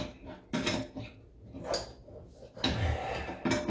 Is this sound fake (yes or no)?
no